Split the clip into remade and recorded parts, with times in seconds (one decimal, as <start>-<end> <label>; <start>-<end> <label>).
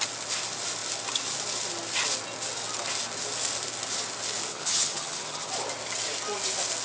0.0-4.5 recorded; 4.5-5.5 remade; 5.5-6.8 recorded